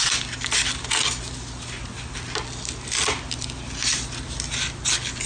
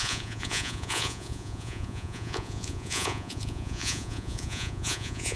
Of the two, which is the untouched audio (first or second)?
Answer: first